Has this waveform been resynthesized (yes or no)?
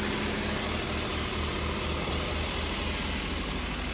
no